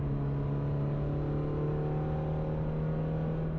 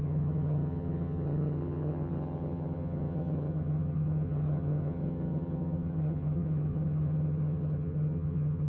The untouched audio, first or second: first